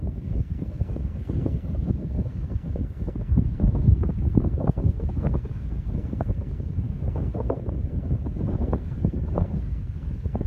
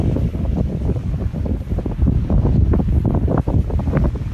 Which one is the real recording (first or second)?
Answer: second